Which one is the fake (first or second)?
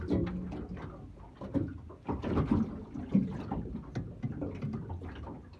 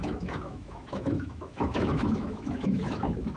second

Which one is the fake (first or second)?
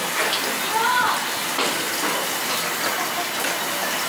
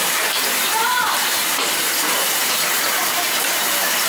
second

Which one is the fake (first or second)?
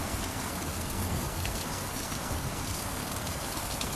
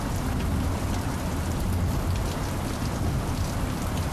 first